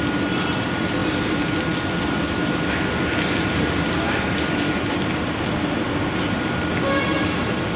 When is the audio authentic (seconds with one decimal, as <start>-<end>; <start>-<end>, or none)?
0.0-7.8